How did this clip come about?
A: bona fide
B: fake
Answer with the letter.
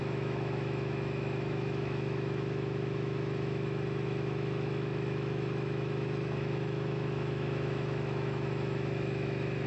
B